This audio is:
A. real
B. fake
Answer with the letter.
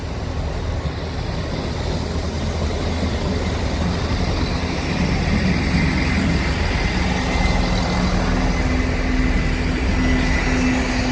A